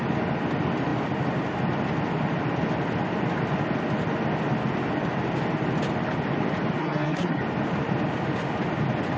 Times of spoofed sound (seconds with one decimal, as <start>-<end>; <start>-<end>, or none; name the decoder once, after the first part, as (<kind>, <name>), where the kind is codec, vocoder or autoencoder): 6.8-7.4 (codec, SNAC)